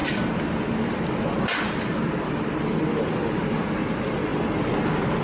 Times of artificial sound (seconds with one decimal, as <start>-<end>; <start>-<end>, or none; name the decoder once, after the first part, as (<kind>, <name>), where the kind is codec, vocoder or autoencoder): none